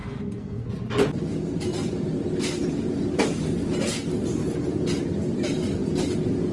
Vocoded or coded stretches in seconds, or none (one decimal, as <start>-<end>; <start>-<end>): 0.0-0.7